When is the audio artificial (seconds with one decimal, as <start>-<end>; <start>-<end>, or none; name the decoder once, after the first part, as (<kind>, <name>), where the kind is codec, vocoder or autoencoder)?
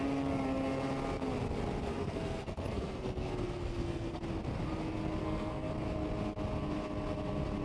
1.9-4.2 (codec, SNAC); 5.2-5.7